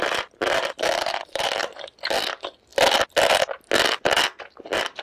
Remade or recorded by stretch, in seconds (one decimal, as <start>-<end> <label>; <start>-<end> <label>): 0.0-2.7 remade; 2.7-4.5 recorded; 4.5-5.0 remade

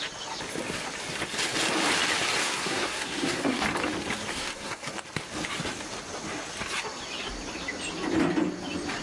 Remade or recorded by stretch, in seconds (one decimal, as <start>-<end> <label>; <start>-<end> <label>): 0.0-2.4 recorded; 2.4-3.6 remade; 3.6-4.3 recorded; 4.3-4.9 remade; 4.9-9.0 recorded

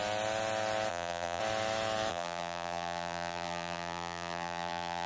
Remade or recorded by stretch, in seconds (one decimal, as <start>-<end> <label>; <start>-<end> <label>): 0.0-0.9 recorded; 0.9-1.4 remade; 1.4-2.1 recorded; 2.1-5.1 remade

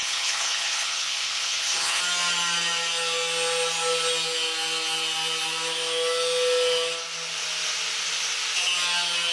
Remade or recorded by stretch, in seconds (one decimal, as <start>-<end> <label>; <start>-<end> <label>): 0.0-2.0 remade; 2.0-9.3 recorded

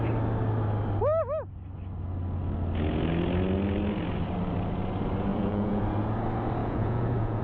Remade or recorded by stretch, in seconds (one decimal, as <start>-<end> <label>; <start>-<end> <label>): 0.0-5.3 recorded; 5.3-5.8 remade; 5.8-6.6 recorded; 6.6-7.4 remade

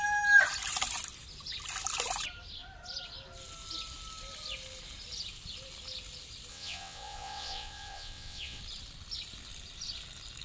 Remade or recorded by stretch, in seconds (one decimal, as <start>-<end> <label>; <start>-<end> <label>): 0.0-6.5 recorded; 6.5-8.6 remade; 8.6-10.4 recorded

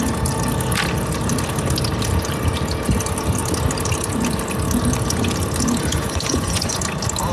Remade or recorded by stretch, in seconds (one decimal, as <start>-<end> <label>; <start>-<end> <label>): 0.0-5.9 recorded; 5.9-6.8 remade; 6.8-7.3 recorded